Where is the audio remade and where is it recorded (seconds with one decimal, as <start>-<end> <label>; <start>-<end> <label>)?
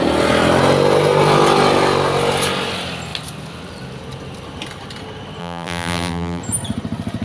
0.0-5.4 recorded; 5.4-6.4 remade; 6.4-7.2 recorded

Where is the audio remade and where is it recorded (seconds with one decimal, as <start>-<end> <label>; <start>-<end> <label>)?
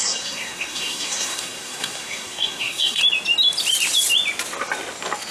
0.0-3.0 remade; 3.0-5.3 recorded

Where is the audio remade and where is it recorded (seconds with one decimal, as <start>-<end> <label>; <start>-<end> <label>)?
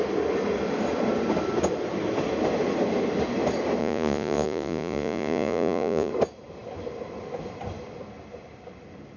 0.0-3.8 recorded; 3.8-6.1 remade; 6.1-9.2 recorded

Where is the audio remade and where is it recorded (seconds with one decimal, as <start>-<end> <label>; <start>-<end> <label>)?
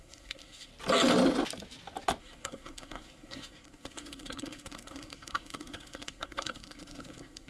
0.0-0.7 remade; 0.7-2.2 recorded; 2.2-7.5 remade